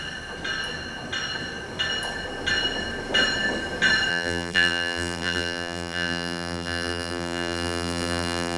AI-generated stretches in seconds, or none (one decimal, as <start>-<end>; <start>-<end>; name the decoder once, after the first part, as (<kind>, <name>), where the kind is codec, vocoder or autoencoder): 4.1-8.6 (vocoder, BigVGAN v2)